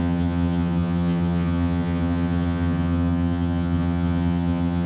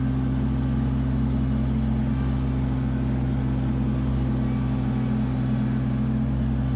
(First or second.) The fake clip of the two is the first